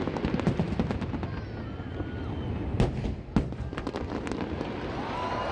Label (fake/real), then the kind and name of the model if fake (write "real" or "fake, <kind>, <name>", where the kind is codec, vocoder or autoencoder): real